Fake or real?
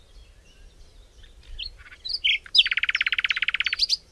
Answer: real